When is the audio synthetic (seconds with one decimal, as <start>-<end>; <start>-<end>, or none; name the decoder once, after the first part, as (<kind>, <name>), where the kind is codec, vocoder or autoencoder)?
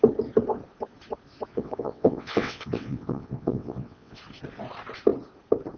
1.5-4.2 (vocoder, WaveNeXt)